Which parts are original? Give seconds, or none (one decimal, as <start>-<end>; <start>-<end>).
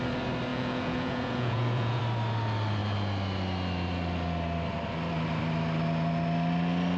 0.0-0.5; 2.0-7.0